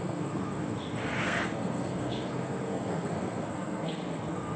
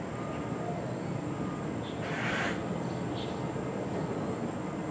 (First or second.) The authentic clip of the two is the second